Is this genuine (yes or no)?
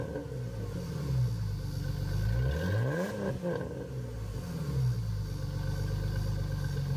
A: yes